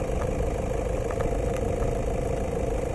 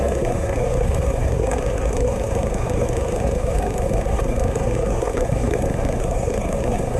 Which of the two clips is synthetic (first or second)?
second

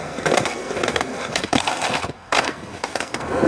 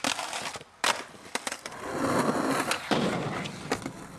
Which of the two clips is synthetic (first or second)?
first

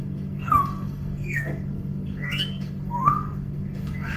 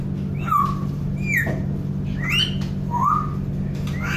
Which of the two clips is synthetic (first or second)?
first